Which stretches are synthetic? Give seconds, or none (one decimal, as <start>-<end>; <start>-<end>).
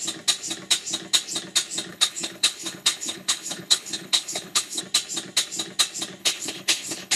1.9-4.8; 6.2-7.2